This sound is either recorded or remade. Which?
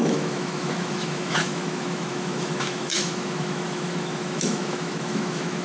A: remade